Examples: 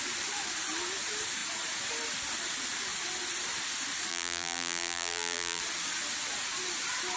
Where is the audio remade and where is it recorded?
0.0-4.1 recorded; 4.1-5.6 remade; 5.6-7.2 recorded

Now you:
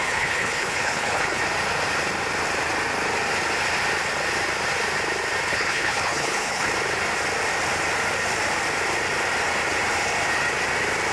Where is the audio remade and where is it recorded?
0.0-1.4 remade; 1.4-5.5 recorded; 5.5-6.7 remade; 6.7-11.1 recorded

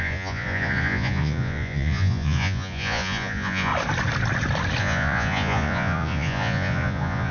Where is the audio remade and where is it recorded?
0.0-3.7 remade; 3.7-4.8 recorded; 4.8-7.3 remade

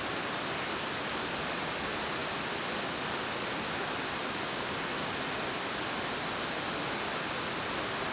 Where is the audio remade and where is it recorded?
0.0-8.1 recorded

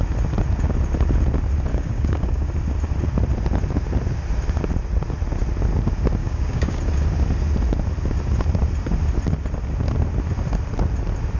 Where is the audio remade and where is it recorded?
0.0-1.7 recorded; 1.7-2.5 remade; 2.5-6.2 recorded; 6.2-6.8 remade; 6.8-11.4 recorded

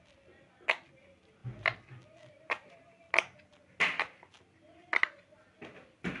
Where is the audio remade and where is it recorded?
0.0-6.2 recorded

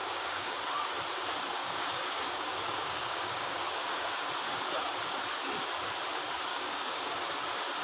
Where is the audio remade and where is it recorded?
0.0-0.6 remade; 0.6-1.6 recorded; 1.6-4.3 remade; 4.3-6.5 recorded; 6.5-7.3 remade; 7.3-7.8 recorded

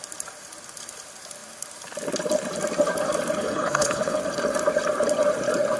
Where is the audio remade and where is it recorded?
0.0-3.4 recorded; 3.4-4.2 remade; 4.2-5.8 recorded